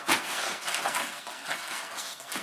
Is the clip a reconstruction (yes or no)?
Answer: yes